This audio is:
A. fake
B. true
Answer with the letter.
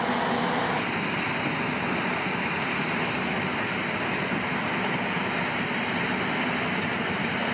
B